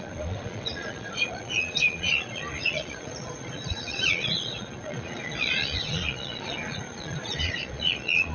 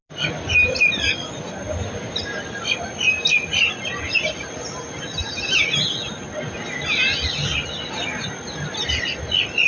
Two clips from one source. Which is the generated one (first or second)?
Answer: first